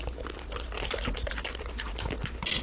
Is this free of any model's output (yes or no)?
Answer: yes